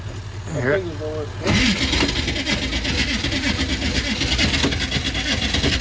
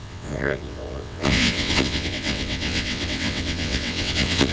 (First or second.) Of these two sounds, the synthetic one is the second